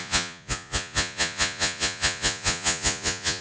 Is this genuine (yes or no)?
no